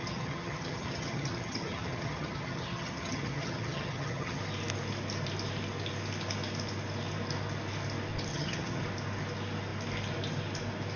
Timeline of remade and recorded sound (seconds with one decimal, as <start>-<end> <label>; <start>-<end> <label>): 0.0-4.4 remade; 4.4-8.3 recorded; 8.3-8.8 remade; 8.8-11.0 recorded